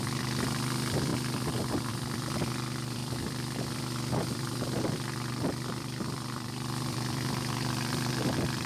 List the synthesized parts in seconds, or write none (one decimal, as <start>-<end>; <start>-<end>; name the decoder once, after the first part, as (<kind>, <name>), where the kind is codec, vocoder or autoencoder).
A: 0.0-1.1 (vocoder, BigVGAN v2); 1.9-8.7